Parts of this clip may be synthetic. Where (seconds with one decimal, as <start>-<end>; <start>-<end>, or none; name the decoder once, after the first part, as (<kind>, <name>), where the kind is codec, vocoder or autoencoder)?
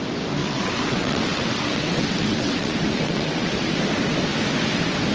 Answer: 0.4-3.5 (vocoder, WaveNeXt)